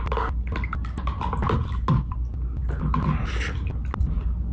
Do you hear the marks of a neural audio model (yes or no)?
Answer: no